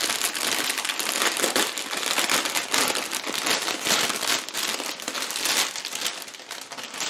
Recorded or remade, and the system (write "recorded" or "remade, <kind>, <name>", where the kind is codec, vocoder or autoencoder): recorded